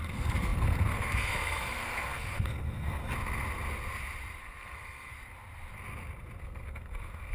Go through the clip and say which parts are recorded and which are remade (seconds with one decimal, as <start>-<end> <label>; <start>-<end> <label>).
0.0-3.0 remade; 3.0-4.4 recorded; 4.4-5.1 remade; 5.1-6.4 recorded; 6.4-7.3 remade